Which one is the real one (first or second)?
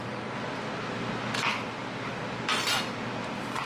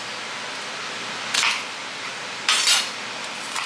first